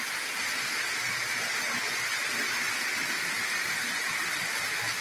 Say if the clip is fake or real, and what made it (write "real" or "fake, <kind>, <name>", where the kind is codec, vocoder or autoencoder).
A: real